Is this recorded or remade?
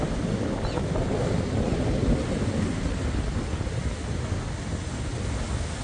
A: recorded